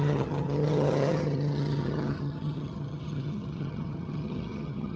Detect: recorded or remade remade